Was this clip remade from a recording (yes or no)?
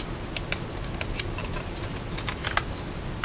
no